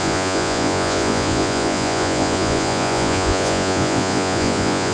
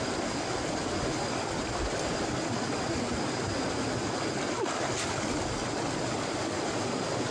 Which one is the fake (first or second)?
first